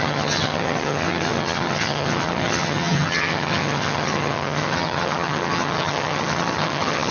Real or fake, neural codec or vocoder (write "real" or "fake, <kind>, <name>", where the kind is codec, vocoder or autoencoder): fake, vocoder, HiFi-GAN